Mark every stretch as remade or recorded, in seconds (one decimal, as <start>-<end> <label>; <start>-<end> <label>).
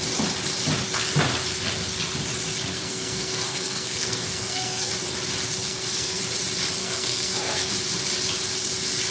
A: 0.0-2.7 recorded; 2.7-4.9 remade; 4.9-5.6 recorded; 5.6-6.2 remade; 6.2-6.8 recorded; 6.8-7.7 remade; 7.7-9.1 recorded